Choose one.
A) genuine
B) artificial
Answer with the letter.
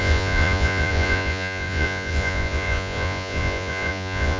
B